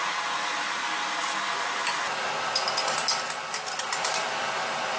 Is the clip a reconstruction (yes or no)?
no